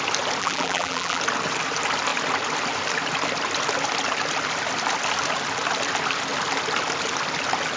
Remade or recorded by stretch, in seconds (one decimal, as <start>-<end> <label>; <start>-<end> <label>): 0.0-0.4 recorded; 0.4-1.2 remade; 1.2-7.8 recorded